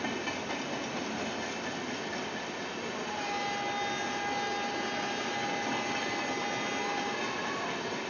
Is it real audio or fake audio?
real